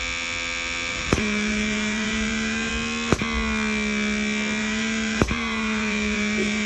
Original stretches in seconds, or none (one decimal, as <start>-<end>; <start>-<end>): 0.0-0.9; 2.7-4.6